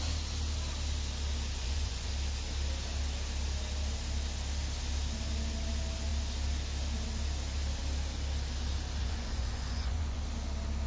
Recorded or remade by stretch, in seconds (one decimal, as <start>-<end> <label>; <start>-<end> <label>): 0.0-1.6 recorded; 1.6-2.1 remade; 2.1-9.0 recorded; 9.0-10.2 remade; 10.2-10.9 recorded